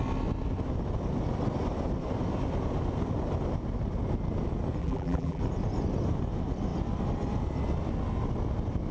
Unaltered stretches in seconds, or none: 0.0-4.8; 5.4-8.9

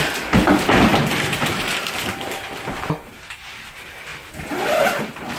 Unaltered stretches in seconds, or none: 0.0-0.9; 1.9-5.4

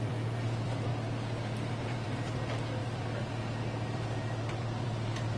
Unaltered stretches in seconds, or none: 0.9-1.7

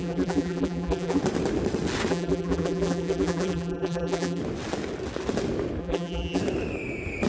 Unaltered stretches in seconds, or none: 1.2-2.1; 4.4-5.8; 6.4-7.3

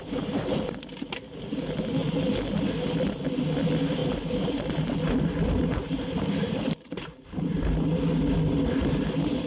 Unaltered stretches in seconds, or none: 0.0-4.0; 8.0-9.5

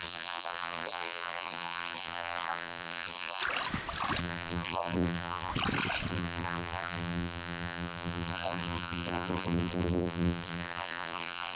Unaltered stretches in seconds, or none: 3.4-4.2; 5.5-6.1

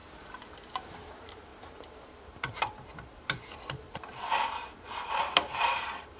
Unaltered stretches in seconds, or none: 0.0-0.5